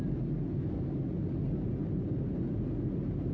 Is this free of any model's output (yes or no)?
yes